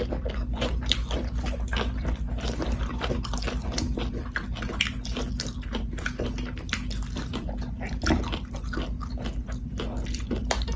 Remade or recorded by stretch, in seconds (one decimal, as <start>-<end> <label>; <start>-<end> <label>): 0.0-10.8 recorded